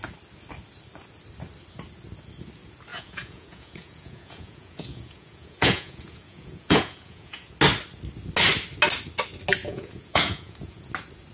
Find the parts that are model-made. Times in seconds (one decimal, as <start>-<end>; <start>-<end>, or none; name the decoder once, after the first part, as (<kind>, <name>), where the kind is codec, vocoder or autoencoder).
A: 2.9-7.5 (vocoder, Vocos); 9.6-10.9